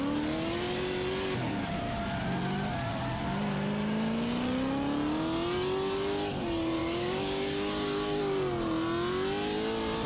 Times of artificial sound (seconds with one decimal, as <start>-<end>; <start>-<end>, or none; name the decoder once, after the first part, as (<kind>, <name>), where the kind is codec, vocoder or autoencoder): 6.8-8.2 (codec, DAC)